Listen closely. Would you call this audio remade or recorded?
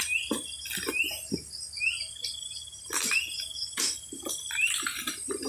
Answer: recorded